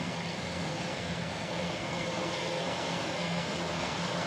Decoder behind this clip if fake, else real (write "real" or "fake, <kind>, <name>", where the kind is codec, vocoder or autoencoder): fake, codec, SNAC